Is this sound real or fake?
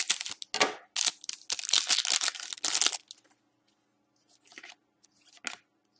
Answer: real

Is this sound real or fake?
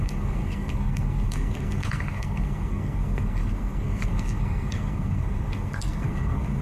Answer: fake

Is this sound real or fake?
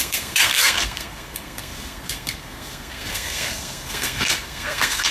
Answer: fake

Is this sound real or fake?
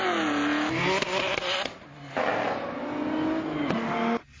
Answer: real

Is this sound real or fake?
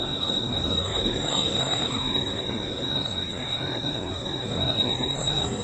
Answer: fake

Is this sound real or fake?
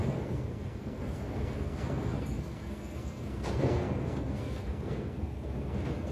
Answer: fake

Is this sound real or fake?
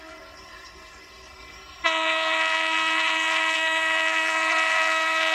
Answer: fake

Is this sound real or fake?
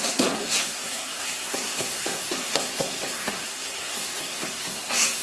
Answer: fake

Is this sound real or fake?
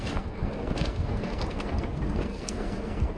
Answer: fake